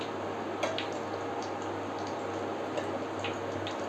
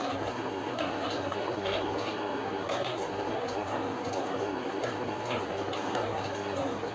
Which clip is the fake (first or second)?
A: second